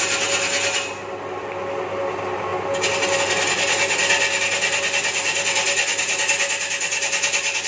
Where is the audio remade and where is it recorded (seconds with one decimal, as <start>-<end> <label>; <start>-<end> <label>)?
0.0-7.7 recorded